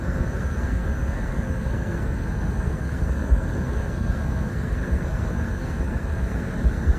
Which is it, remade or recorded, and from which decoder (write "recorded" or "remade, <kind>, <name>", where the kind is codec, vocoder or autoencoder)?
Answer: remade, codec, SNAC